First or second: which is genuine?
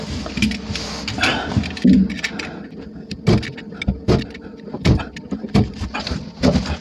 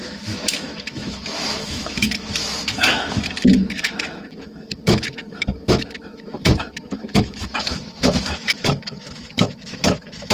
first